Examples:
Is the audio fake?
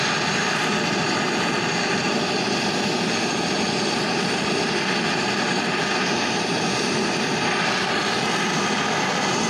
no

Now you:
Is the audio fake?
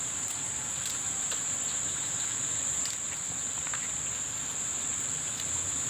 no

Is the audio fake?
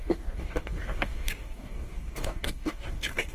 yes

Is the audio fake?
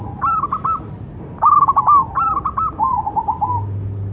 no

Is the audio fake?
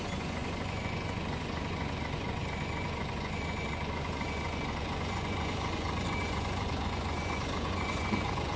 yes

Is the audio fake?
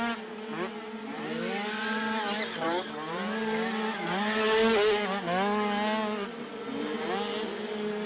no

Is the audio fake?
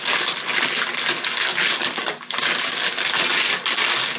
no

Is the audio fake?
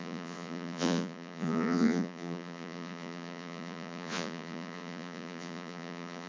yes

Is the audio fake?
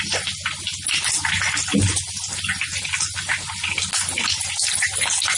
no